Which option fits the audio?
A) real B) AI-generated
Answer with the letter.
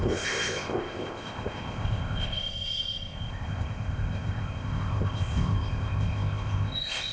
B